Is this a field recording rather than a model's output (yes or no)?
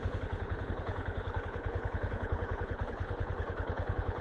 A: no